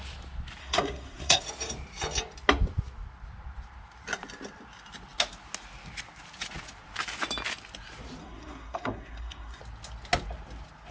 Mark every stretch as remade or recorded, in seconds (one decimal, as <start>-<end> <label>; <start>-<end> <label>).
0.0-0.6 recorded; 0.6-1.4 remade; 1.4-8.2 recorded; 8.2-9.6 remade; 9.6-10.9 recorded